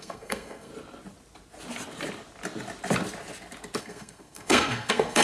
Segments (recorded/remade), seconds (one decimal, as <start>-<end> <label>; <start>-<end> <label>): 0.0-0.7 remade; 0.7-3.8 recorded; 3.8-5.2 remade